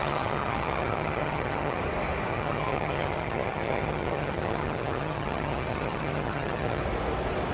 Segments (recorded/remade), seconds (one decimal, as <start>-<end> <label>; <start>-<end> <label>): 0.0-1.8 remade; 1.8-2.3 recorded; 2.3-6.8 remade; 6.8-7.5 recorded